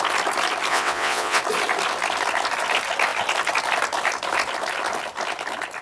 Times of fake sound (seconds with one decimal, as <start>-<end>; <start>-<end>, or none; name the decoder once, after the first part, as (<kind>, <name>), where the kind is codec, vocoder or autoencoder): 0.7-1.4 (vocoder, WaveNeXt)